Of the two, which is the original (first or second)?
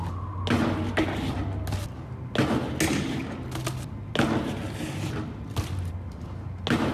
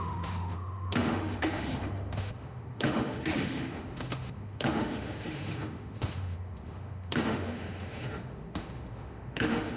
first